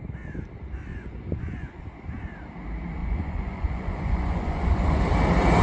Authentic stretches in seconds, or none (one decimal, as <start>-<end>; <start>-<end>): 0.0-0.9; 1.8-3.0; 5.0-5.6